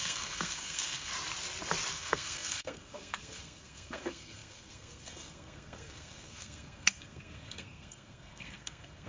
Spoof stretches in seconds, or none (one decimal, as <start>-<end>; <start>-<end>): 0.0-1.1; 1.9-9.1